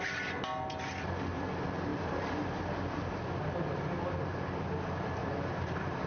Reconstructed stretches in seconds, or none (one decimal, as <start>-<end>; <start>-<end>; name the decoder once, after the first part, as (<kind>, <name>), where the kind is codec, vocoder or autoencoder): 1.9-3.4 (vocoder, BigVGAN v2); 5.2-6.1